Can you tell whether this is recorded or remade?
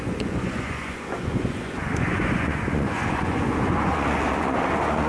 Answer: remade